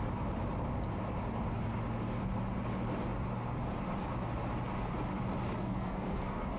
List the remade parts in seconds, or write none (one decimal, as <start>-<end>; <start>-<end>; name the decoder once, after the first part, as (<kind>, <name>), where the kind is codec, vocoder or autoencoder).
5.6-6.6 (codec, SNAC)